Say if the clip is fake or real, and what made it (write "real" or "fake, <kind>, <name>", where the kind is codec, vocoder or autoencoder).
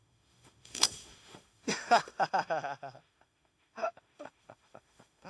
fake, autoencoder, DAC-VAE